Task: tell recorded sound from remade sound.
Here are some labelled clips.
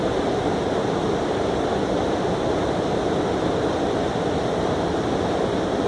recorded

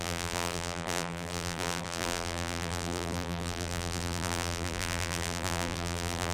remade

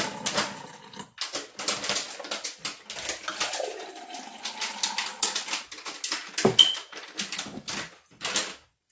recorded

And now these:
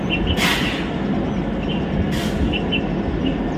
recorded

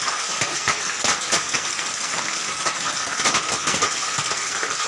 remade